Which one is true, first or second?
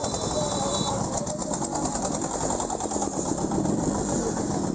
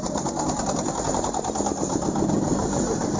first